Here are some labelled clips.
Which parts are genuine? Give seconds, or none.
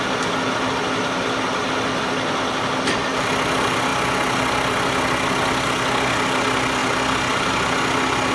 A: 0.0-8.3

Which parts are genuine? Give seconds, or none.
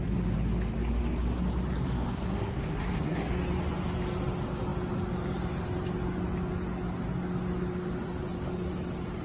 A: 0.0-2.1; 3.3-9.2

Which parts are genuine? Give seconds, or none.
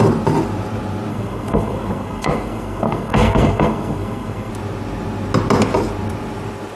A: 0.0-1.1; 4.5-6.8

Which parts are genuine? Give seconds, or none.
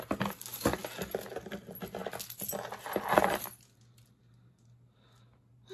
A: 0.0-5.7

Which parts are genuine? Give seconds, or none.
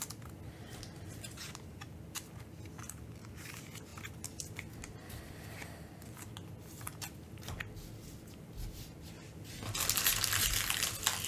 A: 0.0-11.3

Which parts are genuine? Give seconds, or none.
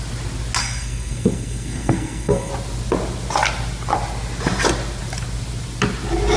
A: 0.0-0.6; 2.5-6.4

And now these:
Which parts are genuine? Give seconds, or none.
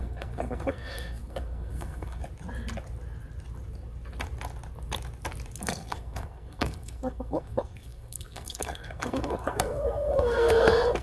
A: 2.2-5.6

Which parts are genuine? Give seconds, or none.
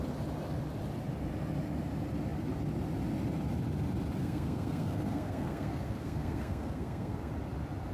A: 0.0-4.2; 7.3-7.9